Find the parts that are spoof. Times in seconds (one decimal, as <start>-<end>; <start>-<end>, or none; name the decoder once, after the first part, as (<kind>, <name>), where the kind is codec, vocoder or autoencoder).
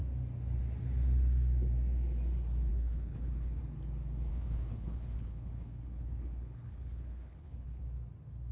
2.7-3.6 (codec, HILCodec); 4.3-7.8